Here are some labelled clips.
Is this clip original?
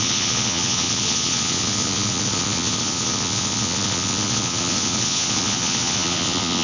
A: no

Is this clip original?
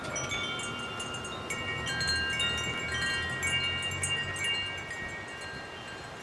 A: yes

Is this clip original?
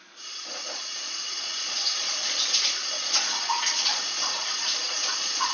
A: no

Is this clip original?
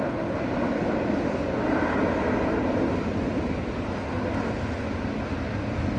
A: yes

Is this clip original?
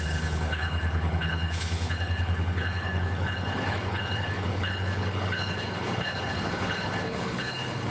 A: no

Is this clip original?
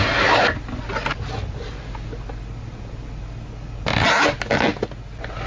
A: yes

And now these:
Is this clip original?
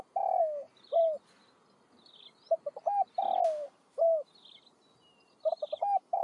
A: yes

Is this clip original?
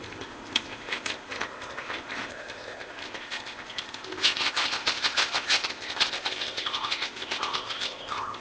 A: no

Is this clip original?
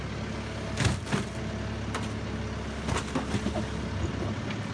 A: yes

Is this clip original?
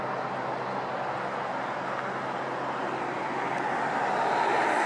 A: yes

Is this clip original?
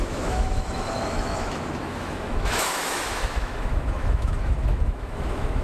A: no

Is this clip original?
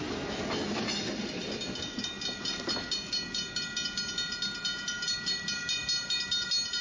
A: yes